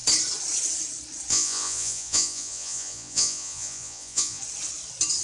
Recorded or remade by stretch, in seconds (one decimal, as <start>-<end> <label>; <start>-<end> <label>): 0.0-1.3 recorded; 1.3-4.4 remade; 4.4-5.2 recorded